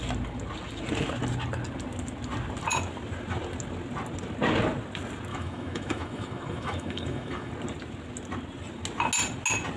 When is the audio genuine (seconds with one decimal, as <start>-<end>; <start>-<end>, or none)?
0.0-5.3; 7.5-9.8